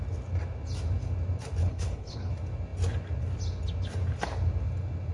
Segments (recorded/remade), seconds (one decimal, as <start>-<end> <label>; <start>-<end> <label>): 0.0-1.6 recorded; 1.6-2.3 remade; 2.3-5.1 recorded